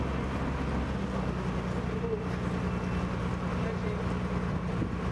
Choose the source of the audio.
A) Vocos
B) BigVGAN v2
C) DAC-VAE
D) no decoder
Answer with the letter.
D